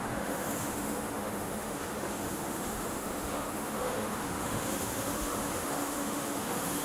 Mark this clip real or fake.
fake